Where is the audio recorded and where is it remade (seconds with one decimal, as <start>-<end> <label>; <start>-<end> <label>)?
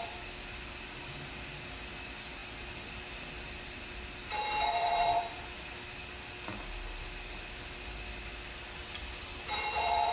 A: 0.0-10.1 recorded